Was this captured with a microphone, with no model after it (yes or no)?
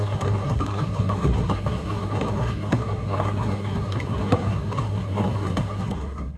no